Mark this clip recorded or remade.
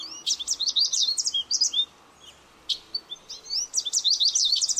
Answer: recorded